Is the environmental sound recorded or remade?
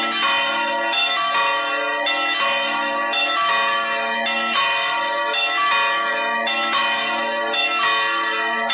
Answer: recorded